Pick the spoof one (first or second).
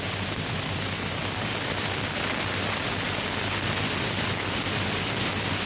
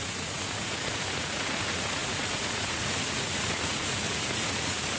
second